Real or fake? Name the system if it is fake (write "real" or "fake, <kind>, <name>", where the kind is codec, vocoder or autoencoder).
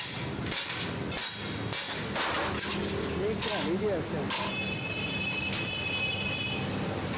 real